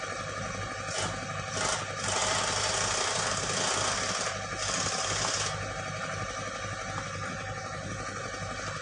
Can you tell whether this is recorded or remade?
recorded